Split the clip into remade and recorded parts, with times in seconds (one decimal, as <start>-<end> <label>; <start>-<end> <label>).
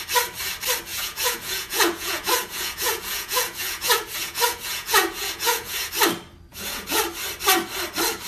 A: 0.0-0.9 recorded; 0.9-5.9 remade; 5.9-6.5 recorded; 6.5-7.0 remade; 7.0-8.3 recorded